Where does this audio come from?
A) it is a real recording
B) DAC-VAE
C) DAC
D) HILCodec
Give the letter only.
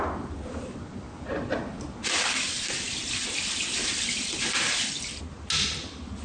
A